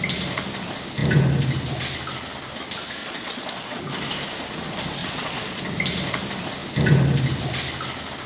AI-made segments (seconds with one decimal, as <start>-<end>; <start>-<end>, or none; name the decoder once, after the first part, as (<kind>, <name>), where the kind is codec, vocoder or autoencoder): 3.0-3.8 (vocoder, Vocos); 5.0-5.6